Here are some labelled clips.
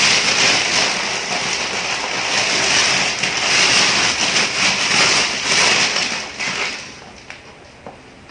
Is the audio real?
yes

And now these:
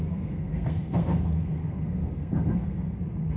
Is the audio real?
no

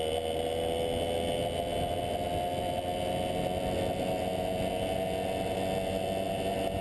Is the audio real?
yes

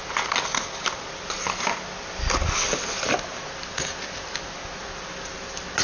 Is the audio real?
yes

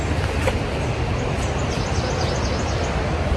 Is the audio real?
yes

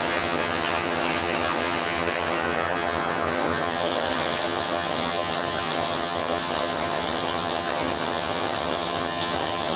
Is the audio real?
no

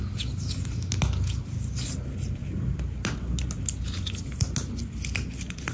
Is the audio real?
yes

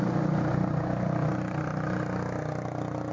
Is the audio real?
yes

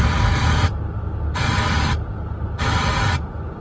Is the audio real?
yes